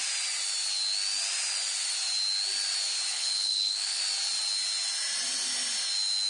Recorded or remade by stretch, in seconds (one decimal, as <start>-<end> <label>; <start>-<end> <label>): 0.0-3.1 recorded; 3.1-4.0 remade; 4.0-6.3 recorded